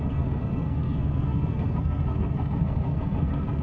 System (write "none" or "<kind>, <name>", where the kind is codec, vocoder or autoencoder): codec, SNAC